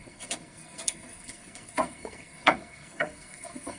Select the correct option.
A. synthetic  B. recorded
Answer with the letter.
A